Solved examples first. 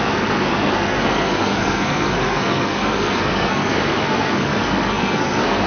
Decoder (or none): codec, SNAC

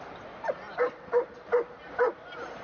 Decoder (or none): vocoder, BigVGAN v2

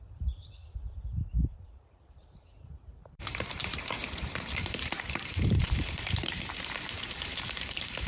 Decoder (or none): vocoder, BigVGAN v2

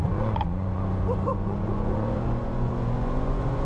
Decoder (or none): vocoder, Vocos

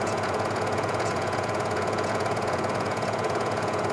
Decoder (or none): vocoder, Vocos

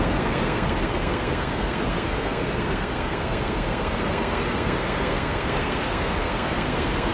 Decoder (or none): codec, SNAC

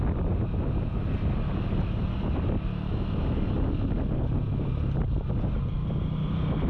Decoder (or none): none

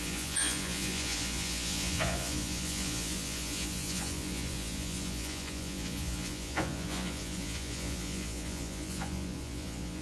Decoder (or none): vocoder, Vocos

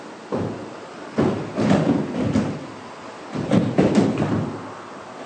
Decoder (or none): none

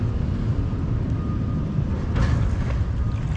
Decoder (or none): none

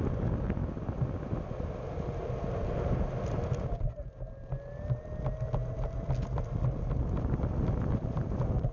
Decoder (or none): none